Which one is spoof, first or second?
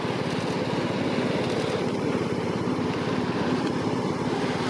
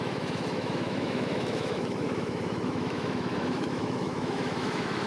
second